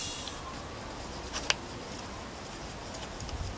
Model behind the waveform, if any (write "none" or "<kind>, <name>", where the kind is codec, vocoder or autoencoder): none